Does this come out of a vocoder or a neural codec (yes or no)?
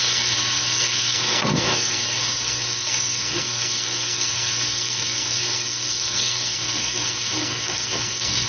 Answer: yes